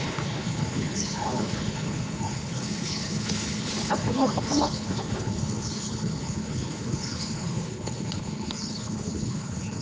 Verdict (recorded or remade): remade